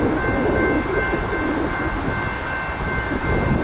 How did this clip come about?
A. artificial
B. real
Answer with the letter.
B